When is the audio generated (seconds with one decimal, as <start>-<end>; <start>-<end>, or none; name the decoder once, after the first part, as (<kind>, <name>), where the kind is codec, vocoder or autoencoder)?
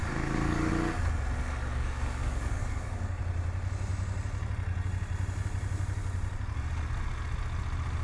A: 0.0-0.7 (codec, DAC); 1.6-3.2